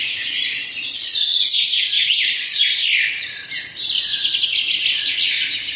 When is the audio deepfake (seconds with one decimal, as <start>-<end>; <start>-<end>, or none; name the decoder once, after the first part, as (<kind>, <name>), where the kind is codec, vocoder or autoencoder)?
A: 0.0-1.3 (vocoder, BigVGAN v2); 2.1-3.4; 4.2-5.8